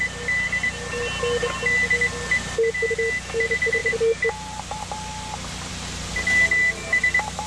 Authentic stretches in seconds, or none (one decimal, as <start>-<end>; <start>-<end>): 0.0-7.5